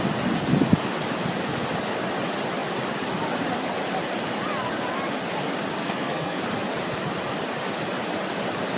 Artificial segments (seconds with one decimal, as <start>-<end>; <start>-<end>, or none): 5.8-6.4

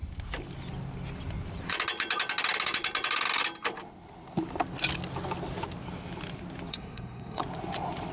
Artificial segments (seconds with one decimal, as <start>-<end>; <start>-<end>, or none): 6.7-7.4

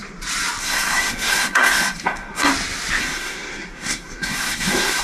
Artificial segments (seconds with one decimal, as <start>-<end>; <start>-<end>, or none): 0.6-2.5; 3.0-5.0

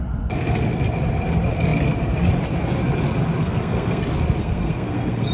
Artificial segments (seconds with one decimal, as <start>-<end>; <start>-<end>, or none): 3.4-4.0; 4.4-5.3

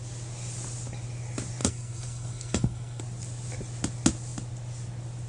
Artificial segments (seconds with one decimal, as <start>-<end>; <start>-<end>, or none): 1.6-3.0

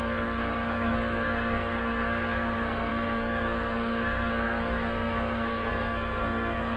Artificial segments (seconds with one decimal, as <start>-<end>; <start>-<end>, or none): 0.0-6.8